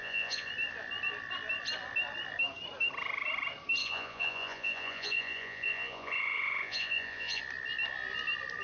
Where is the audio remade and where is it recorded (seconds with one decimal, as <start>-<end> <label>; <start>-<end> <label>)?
0.0-0.5 remade; 0.5-3.8 recorded; 3.8-7.4 remade; 7.4-8.6 recorded